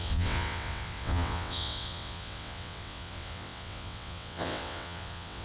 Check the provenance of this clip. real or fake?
fake